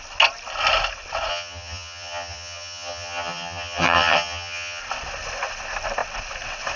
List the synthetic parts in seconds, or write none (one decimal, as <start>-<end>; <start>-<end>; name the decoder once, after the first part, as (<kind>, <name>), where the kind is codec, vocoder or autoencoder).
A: 1.3-4.8 (vocoder, HiFi-GAN)